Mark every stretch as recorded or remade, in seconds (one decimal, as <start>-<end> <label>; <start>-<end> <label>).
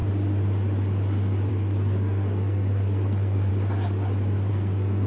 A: 0.0-1.5 recorded; 1.5-3.5 remade; 3.5-4.5 recorded; 4.5-5.1 remade